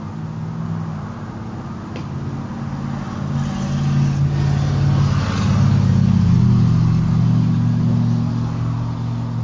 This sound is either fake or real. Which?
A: real